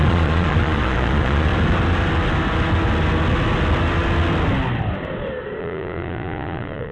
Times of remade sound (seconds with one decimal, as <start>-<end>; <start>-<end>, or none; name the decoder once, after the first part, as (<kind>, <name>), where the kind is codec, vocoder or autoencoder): 0.0-1.5 (vocoder, Vocos); 5.6-6.9